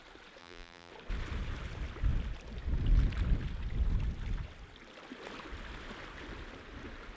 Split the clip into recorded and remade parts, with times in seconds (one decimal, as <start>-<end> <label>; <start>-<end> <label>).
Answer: 0.0-0.4 recorded; 0.4-0.9 remade; 0.9-7.2 recorded